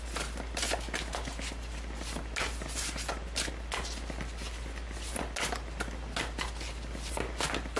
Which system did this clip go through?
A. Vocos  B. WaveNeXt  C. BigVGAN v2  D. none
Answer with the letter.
D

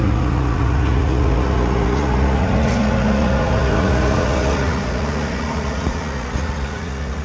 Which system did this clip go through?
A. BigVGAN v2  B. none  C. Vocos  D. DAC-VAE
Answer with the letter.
C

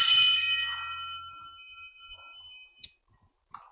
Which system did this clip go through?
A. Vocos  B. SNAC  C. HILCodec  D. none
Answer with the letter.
D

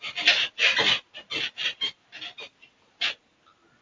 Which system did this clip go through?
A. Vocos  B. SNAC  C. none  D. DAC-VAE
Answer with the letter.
C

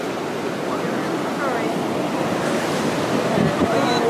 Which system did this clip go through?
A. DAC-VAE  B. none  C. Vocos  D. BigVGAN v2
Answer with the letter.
B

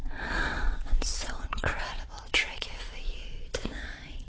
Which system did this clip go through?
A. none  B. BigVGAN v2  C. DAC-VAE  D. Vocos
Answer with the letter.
D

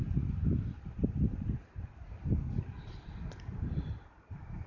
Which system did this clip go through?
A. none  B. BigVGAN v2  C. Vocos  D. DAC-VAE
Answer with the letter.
A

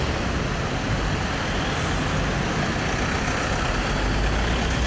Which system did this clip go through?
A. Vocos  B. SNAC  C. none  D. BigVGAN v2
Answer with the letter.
C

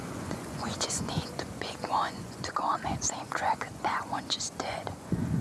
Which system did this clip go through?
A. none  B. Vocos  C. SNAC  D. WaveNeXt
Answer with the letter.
B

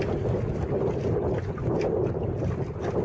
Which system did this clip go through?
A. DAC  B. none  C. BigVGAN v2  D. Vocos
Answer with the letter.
B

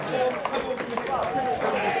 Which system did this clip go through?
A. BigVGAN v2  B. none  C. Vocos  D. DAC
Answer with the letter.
B